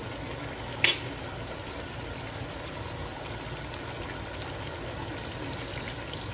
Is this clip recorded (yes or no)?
yes